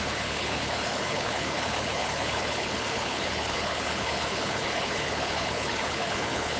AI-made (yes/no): yes